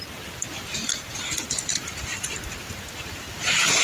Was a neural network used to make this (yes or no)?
no